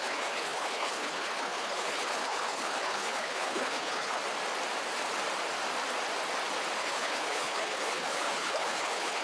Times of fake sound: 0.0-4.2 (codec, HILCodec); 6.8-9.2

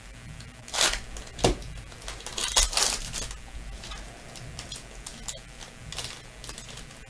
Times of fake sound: none

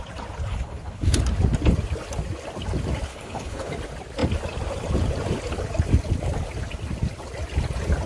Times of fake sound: 0.5-1.2 (codec, HILCodec); 3.1-3.7

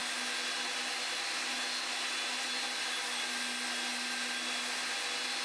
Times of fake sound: none

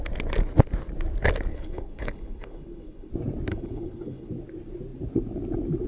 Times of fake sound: 1.5-3.1 (codec, HILCodec); 3.5-4.3

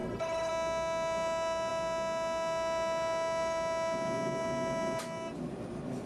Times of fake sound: 0.0-0.5 (codec, HILCodec)

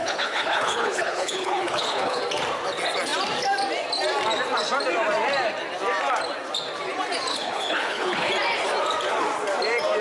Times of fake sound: 0.0-2.2 (codec, HILCodec); 7.3-8.3

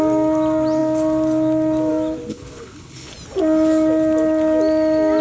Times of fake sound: 2.3-3.1 (codec, HILCodec)